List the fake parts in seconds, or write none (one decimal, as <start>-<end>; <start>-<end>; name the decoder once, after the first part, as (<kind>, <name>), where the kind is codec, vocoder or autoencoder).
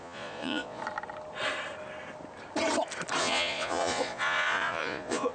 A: 0.0-0.8 (vocoder, Vocos); 3.2-5.3